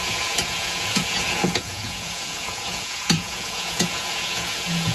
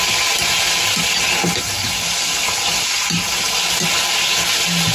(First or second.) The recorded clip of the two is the second